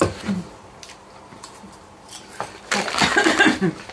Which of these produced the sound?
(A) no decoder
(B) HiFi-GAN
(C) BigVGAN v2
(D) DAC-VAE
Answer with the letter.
A